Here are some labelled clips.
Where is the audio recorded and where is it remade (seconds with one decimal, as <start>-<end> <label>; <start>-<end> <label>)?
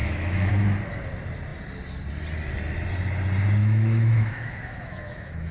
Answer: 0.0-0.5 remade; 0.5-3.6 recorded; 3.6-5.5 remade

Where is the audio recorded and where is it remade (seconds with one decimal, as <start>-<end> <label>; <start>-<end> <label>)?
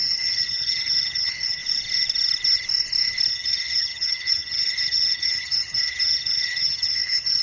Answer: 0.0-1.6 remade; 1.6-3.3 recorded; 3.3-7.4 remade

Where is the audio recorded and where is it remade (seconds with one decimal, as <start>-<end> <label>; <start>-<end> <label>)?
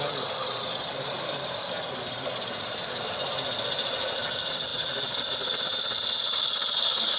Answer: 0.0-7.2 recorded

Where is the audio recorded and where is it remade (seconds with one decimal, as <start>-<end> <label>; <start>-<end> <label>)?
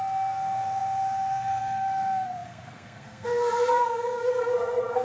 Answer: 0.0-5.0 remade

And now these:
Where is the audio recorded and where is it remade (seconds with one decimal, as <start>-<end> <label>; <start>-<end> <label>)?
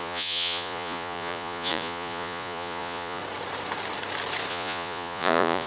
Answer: 0.0-3.2 remade; 3.2-4.5 recorded; 4.5-5.7 remade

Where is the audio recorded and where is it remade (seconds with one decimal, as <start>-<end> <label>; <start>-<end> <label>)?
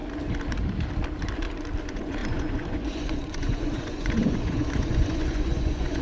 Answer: 0.0-1.8 recorded; 1.8-6.0 remade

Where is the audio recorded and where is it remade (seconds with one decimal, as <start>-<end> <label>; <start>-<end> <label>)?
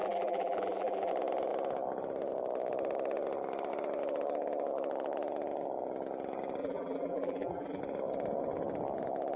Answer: 0.0-1.1 remade; 1.1-6.6 recorded; 6.6-7.8 remade; 7.8-9.4 recorded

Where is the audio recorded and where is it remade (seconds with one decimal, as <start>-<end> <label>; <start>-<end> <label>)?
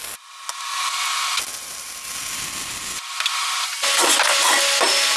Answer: 0.0-5.2 recorded